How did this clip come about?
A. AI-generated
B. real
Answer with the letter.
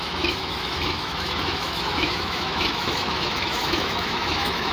A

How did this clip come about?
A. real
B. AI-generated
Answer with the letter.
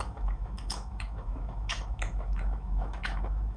B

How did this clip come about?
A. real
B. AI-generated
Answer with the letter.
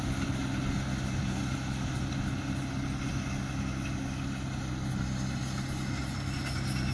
A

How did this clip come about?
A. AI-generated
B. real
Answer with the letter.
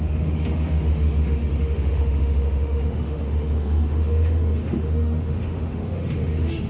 A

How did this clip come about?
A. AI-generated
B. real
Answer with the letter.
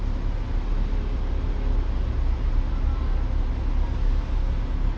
B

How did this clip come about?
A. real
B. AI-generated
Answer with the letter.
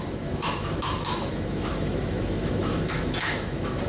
B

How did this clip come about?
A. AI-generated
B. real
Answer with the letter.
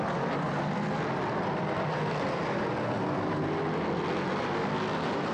B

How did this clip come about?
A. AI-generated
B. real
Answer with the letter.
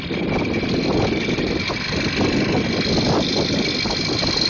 B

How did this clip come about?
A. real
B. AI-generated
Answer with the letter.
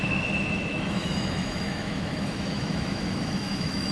B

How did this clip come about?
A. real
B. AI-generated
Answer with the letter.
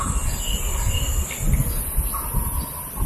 A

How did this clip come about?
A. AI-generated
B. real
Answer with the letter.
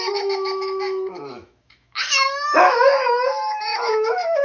A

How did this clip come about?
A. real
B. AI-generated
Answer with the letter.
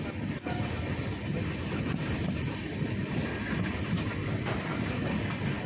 A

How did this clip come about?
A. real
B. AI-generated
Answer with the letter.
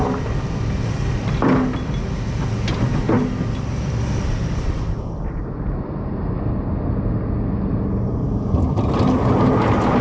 A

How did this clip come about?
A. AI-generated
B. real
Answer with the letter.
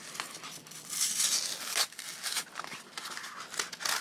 B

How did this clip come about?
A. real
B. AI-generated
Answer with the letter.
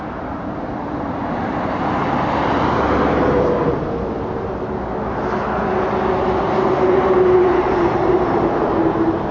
A